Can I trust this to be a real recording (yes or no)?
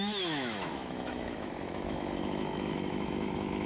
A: no